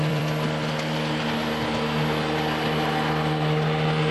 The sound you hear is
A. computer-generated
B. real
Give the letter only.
A